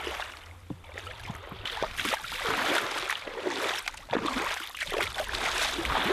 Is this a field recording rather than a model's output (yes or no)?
yes